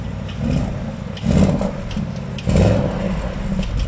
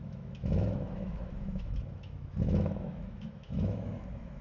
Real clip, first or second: first